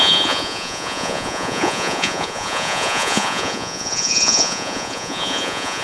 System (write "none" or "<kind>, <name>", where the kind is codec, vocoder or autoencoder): vocoder, Vocos